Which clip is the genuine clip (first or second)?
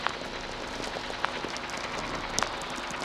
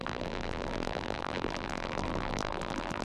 first